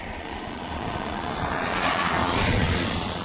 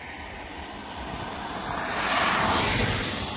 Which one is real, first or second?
second